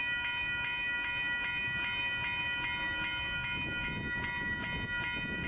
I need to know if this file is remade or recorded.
recorded